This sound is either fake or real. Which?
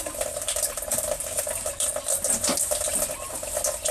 fake